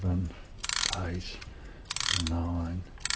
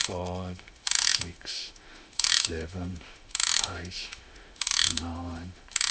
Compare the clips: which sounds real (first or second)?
first